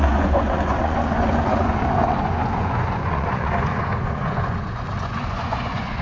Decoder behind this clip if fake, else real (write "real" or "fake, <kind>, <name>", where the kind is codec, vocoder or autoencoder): fake, vocoder, Vocos